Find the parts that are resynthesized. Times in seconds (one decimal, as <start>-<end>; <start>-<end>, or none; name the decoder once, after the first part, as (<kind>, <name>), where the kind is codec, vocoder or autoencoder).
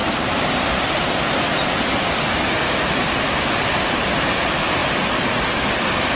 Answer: none